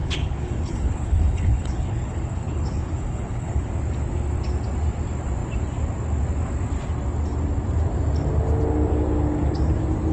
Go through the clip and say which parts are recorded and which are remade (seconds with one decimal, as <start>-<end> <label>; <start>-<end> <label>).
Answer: 0.0-3.7 remade; 3.7-10.1 recorded